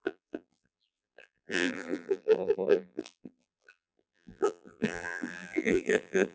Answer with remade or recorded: remade